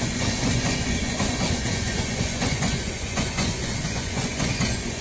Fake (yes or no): yes